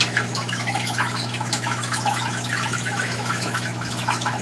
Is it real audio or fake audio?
fake